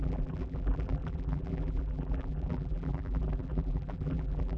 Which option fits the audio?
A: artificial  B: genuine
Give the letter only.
A